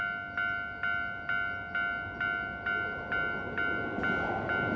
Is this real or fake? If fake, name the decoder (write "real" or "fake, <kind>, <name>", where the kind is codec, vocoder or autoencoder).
real